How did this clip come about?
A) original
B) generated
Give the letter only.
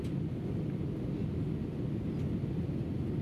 A